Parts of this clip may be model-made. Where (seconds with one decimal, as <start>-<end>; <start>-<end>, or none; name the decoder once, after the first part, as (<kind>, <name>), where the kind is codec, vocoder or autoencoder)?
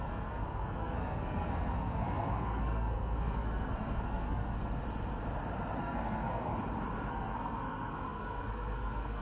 0.0-4.8 (codec, SNAC); 5.8-6.5; 7.1-9.2